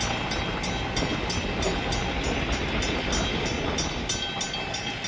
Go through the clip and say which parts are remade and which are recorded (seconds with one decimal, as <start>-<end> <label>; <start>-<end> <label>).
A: 0.0-5.1 recorded